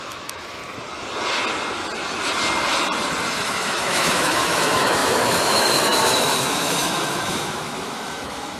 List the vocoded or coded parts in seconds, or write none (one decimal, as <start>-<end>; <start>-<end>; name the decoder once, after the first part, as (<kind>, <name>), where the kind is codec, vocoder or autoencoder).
0.0-0.6 (autoencoder, DAC-VAE); 3.5-8.6